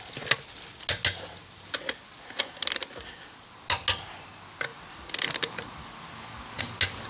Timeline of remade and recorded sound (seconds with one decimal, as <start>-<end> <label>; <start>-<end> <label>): 0.0-7.1 recorded